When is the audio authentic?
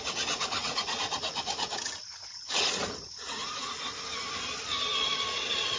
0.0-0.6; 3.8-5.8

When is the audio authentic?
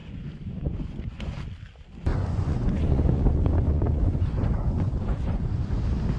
1.3-2.1; 5.8-6.2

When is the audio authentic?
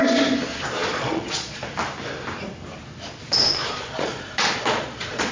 0.0-0.7; 1.6-3.8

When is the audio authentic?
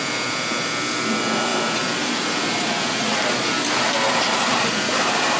0.0-5.4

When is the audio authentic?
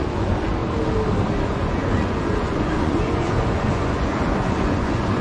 0.6-1.4